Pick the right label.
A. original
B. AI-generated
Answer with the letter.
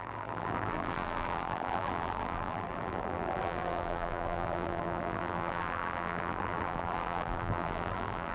B